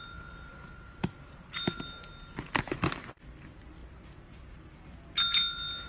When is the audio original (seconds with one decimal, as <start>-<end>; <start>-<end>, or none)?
0.0-5.9